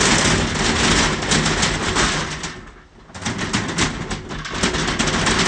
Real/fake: real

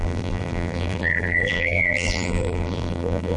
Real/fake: fake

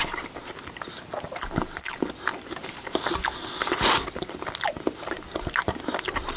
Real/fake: real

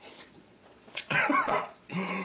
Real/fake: fake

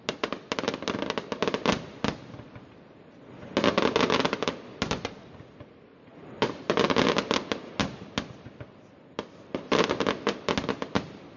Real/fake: real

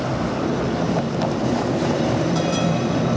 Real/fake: fake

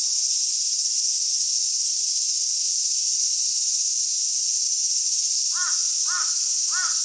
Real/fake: real